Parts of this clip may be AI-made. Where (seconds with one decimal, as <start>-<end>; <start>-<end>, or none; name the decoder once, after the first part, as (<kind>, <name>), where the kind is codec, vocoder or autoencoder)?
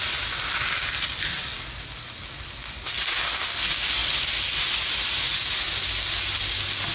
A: none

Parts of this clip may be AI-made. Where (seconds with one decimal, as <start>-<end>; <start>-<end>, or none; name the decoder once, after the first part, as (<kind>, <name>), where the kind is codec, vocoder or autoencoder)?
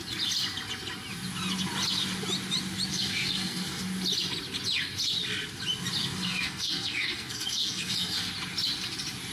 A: 2.9-3.8 (codec, SNAC); 6.0-8.3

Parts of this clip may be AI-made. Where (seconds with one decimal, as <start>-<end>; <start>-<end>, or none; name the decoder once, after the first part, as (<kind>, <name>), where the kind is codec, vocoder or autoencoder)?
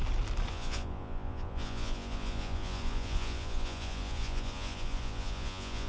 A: 0.5-5.9 (vocoder, Vocos)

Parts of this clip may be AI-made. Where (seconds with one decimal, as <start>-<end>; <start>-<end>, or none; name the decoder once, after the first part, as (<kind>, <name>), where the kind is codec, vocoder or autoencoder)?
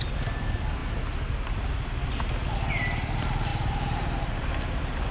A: 3.5-4.5 (vocoder, BigVGAN v2)